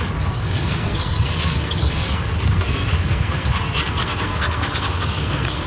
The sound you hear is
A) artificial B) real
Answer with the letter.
A